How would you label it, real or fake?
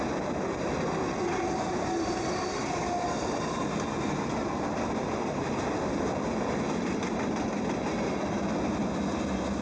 real